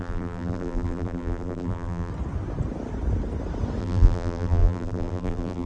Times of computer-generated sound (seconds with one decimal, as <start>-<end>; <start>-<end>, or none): 0.0-2.1; 3.8-5.7

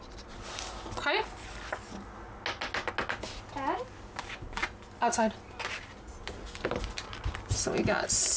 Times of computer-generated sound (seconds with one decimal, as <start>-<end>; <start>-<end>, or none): none

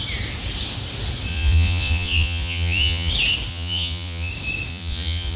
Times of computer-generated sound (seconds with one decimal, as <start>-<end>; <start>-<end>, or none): 1.3-3.1; 3.5-4.3; 4.7-5.4

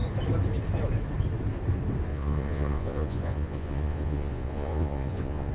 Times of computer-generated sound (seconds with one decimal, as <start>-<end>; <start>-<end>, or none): 2.1-5.5